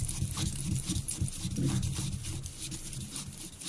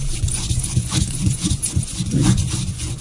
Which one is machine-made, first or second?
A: second